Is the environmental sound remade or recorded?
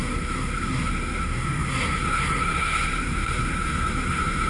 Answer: remade